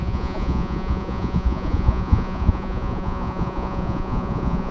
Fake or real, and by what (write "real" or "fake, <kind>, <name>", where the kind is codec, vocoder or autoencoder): fake, vocoder, Vocos